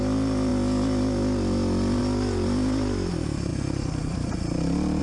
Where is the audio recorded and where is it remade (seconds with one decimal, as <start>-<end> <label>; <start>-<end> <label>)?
0.0-5.0 recorded